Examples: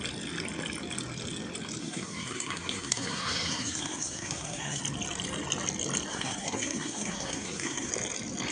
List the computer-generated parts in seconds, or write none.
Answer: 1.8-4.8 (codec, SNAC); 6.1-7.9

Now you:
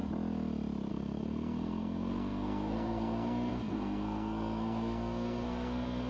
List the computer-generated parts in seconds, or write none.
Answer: 0.9-6.1 (codec, SNAC)

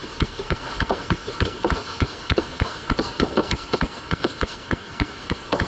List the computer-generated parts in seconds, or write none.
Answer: 0.0-5.7 (codec, SNAC)

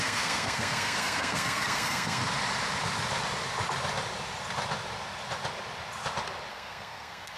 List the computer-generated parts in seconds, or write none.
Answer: 0.0-2.2 (codec, SNAC); 6.5-7.4